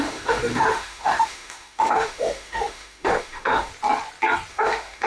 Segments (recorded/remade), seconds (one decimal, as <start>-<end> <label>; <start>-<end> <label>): 0.0-3.7 remade; 3.7-4.5 recorded; 4.5-5.1 remade